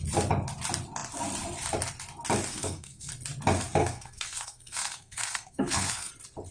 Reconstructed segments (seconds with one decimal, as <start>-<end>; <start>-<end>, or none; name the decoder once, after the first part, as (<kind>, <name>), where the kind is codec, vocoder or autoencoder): 2.5-3.1 (codec, SNAC); 3.8-6.1